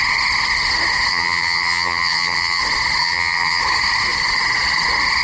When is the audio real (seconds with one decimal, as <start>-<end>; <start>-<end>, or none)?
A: 0.0-1.1; 2.6-3.0; 3.6-5.2